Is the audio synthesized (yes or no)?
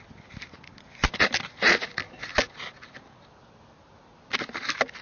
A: no